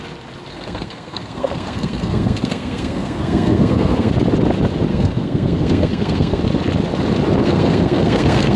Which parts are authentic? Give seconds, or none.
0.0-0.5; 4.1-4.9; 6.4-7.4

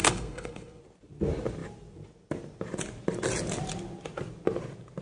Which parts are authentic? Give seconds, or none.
0.8-5.0

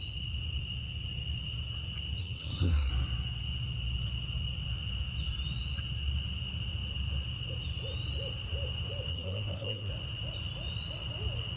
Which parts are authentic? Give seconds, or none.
0.0-2.2; 2.9-9.1; 9.9-11.6

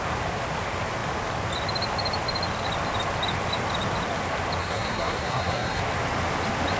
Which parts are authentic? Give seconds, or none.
0.0-4.6; 5.8-6.8

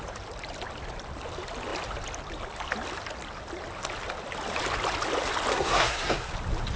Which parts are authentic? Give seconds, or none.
0.0-5.5; 6.3-6.8

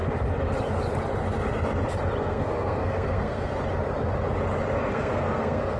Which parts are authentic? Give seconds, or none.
0.0-2.2; 3.5-4.9

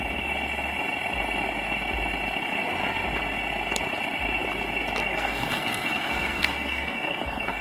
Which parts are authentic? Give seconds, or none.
0.0-5.0